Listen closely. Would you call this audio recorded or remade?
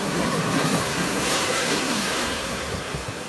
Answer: remade